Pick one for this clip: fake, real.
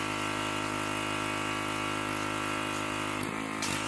real